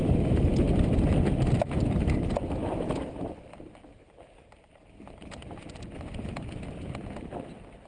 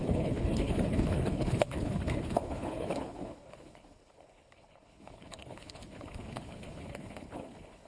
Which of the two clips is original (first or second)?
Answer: first